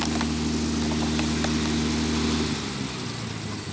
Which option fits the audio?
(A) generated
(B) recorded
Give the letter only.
B